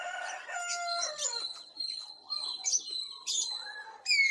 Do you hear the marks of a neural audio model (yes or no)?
no